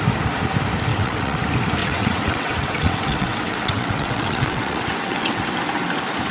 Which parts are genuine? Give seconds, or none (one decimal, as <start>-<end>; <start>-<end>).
0.0-0.9; 1.4-1.8; 5.5-6.3